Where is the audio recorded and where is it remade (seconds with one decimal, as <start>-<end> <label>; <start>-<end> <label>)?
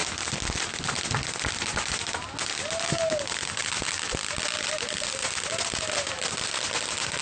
0.0-7.2 recorded